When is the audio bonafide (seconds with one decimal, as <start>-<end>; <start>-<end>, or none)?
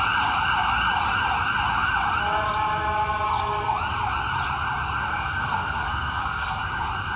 0.0-5.1; 6.6-7.2